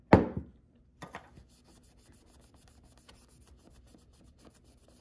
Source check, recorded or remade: recorded